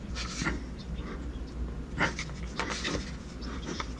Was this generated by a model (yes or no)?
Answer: yes